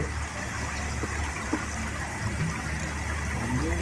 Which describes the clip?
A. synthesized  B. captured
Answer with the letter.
B